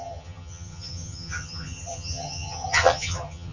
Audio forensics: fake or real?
fake